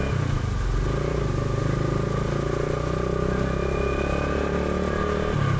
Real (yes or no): yes